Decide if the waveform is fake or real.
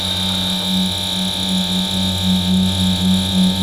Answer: real